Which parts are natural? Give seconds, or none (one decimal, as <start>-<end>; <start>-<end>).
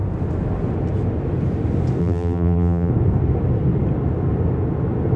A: 0.0-2.0; 2.9-5.2